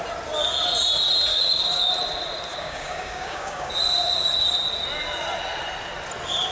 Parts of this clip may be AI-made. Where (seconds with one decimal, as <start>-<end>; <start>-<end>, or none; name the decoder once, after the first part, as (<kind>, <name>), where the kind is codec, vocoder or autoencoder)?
1.3-1.9 (codec, DAC); 2.5-3.7